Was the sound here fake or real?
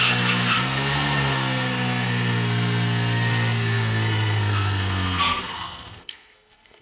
fake